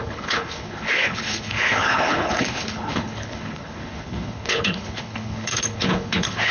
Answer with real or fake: fake